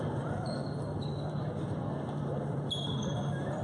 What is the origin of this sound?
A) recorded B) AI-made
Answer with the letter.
B